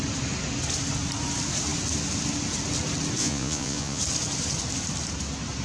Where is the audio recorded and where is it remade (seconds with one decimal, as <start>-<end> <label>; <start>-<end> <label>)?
0.0-3.2 recorded; 3.2-4.0 remade; 4.0-5.6 recorded